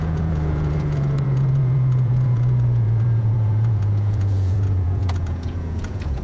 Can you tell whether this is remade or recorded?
remade